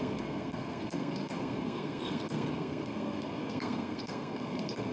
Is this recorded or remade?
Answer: remade